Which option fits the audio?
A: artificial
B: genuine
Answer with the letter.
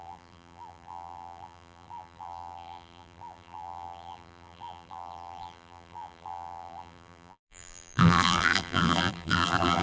A